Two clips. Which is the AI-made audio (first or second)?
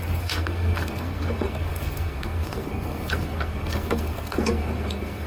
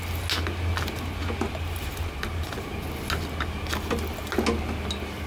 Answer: first